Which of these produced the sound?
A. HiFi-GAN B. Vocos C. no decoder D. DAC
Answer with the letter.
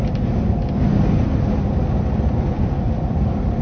C